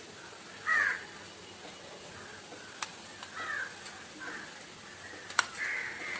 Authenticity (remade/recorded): recorded